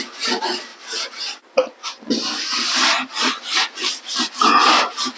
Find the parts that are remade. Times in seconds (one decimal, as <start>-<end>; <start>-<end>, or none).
none